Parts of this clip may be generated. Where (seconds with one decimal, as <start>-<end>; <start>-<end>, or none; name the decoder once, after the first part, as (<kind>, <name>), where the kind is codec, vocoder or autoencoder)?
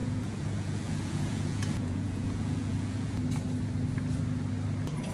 0.0-3.1 (vocoder, Vocos)